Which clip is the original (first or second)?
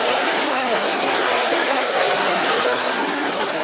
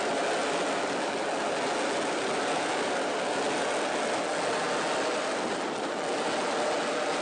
second